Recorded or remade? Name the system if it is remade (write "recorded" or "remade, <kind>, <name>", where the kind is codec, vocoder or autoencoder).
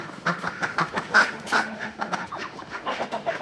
remade, autoencoder, DAC-VAE